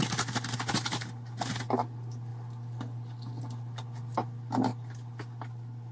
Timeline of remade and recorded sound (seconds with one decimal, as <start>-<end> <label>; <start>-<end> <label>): 0.0-5.9 recorded